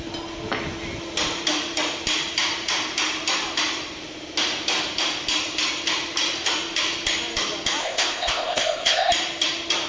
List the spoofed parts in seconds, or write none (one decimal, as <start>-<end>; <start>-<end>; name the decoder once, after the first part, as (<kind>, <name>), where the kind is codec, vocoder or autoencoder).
7.8-9.1 (codec, ZipCodec)